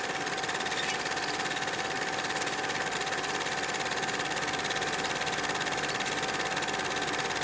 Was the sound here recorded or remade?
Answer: recorded